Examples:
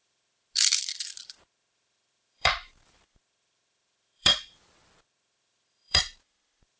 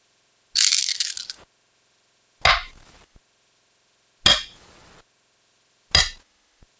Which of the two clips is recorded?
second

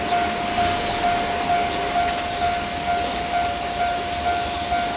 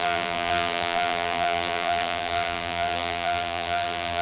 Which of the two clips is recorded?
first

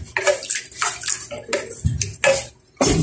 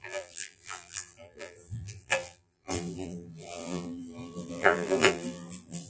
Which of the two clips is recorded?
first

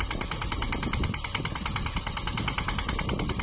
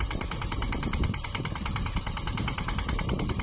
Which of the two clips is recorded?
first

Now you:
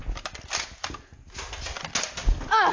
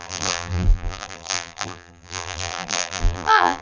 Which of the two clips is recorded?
first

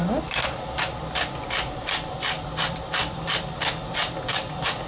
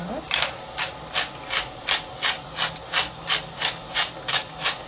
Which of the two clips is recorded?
second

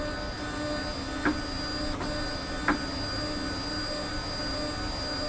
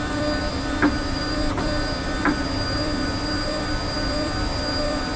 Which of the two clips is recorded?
first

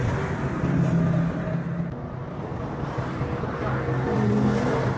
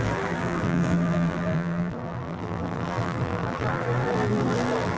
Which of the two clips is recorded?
first